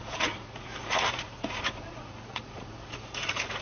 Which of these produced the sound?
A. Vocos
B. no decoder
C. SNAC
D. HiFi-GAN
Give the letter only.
A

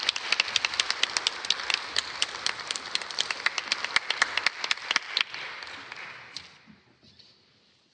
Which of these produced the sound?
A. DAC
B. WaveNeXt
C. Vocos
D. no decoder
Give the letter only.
D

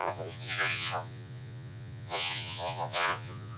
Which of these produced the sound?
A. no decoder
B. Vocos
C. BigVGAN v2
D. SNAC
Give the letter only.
B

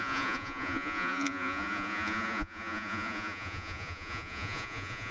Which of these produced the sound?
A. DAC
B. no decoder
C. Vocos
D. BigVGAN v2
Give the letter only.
C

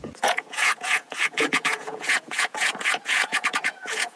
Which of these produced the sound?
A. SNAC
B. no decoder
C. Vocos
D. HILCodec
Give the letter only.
C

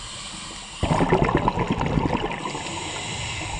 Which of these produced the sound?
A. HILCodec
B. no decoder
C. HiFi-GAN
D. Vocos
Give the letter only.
B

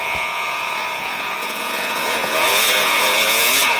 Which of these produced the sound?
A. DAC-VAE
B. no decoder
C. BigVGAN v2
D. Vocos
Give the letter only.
D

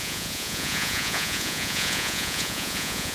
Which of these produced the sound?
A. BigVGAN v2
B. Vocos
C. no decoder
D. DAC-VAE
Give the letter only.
B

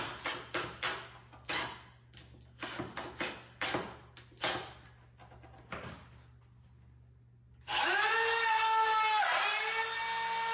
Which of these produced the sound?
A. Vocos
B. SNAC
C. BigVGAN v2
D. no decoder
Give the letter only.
D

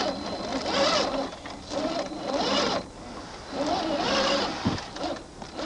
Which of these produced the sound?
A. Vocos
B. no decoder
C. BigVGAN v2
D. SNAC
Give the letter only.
B